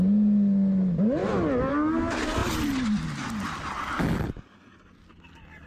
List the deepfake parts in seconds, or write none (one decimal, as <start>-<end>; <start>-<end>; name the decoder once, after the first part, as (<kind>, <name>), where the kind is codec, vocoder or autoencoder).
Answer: none